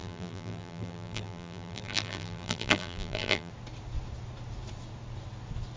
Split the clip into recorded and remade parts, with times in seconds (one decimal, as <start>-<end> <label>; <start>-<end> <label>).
0.0-3.5 remade; 3.5-5.8 recorded